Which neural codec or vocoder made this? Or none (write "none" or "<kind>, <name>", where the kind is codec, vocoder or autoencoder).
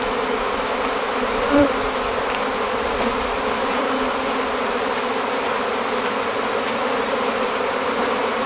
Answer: none